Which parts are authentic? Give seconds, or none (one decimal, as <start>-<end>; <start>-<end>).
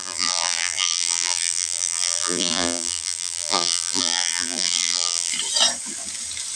5.3-6.6